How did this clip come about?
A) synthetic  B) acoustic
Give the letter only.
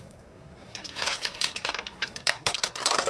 A